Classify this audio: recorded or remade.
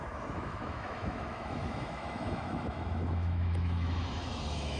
remade